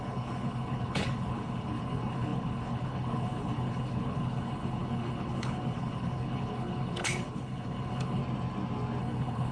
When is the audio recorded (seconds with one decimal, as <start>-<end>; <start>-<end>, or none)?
8.2-9.0